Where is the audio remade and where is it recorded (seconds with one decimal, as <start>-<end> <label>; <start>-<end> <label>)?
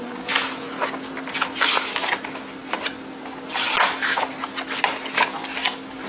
0.0-6.1 recorded